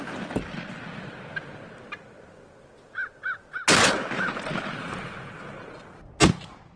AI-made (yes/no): no